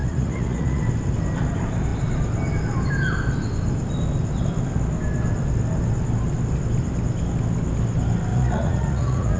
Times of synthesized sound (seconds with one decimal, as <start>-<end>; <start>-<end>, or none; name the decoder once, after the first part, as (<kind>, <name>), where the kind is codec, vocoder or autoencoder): 0.0-0.8 (vocoder, Vocos); 8.3-9.4